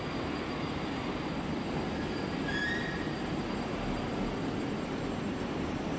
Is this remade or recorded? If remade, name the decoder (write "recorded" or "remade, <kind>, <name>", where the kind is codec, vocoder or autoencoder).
recorded